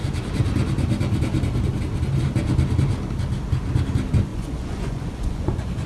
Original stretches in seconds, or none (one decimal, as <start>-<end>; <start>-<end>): 0.0-4.3